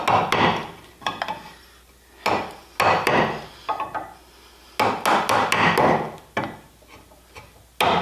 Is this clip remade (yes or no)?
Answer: no